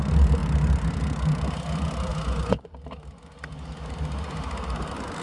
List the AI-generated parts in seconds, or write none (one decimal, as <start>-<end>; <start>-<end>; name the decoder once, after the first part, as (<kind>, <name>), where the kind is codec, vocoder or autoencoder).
2.1-2.7 (vocoder, Vocos)